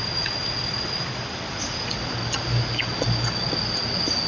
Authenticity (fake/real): real